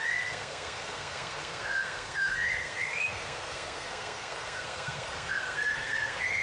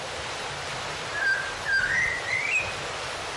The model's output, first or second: first